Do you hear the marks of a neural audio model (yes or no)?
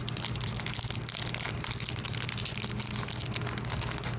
no